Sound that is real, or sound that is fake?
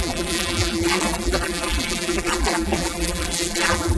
fake